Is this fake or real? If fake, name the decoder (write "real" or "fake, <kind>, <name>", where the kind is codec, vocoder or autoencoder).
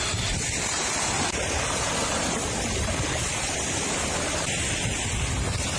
real